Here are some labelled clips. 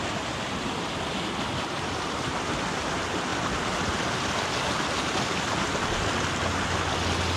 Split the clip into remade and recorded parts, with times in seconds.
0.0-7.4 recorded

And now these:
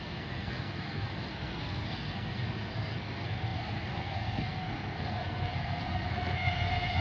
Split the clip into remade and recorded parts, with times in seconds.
0.0-7.0 remade

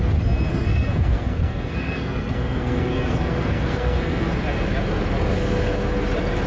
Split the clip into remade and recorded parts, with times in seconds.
0.0-0.5 recorded; 0.5-4.3 remade; 4.3-6.5 recorded

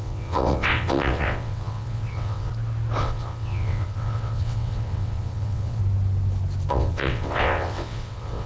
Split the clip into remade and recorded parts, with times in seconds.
0.0-2.5 remade; 2.5-3.0 recorded; 3.0-5.8 remade; 5.8-6.7 recorded; 6.7-8.5 remade

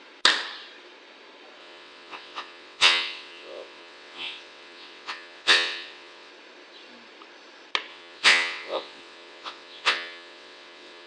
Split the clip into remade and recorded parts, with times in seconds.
0.0-1.6 recorded; 1.6-6.3 remade; 6.3-7.9 recorded; 7.9-11.1 remade

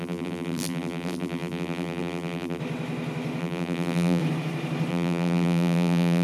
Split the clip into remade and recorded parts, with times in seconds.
0.0-2.6 remade; 2.6-3.4 recorded; 3.4-4.2 remade; 4.2-4.9 recorded; 4.9-6.2 remade

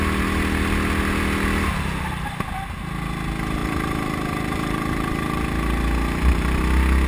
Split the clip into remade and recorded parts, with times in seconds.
0.0-3.6 recorded; 3.6-6.6 remade; 6.6-7.1 recorded